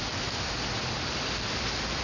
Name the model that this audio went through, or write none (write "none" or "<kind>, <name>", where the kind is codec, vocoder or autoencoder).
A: none